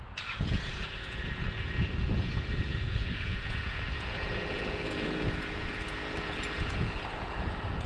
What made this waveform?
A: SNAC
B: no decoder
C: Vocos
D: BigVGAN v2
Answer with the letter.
C